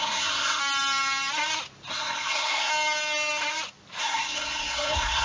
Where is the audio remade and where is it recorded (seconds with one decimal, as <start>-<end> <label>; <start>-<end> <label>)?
0.0-0.6 remade; 0.6-1.9 recorded; 1.9-2.7 remade; 2.7-4.0 recorded; 4.0-5.2 remade